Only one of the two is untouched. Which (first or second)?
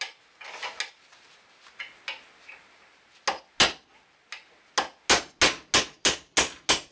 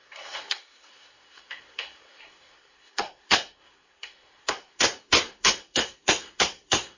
first